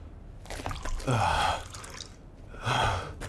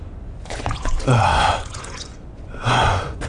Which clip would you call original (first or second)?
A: first